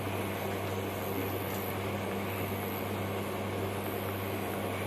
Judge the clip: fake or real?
real